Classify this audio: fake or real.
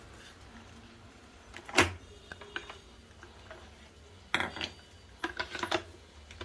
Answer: real